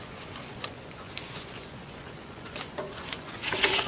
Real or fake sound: fake